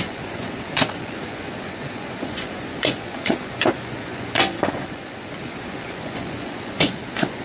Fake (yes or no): yes